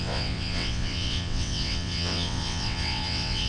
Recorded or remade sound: remade